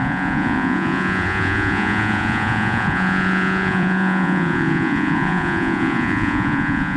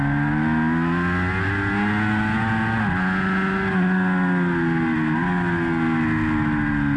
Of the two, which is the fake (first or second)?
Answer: first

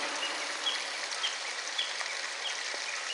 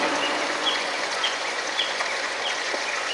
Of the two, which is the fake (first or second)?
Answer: second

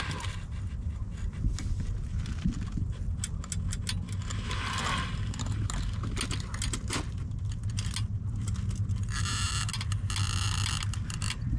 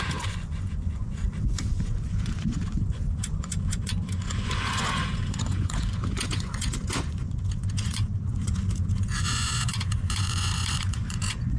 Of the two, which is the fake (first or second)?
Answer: second